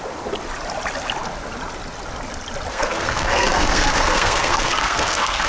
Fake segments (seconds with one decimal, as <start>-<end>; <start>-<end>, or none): 2.7-5.5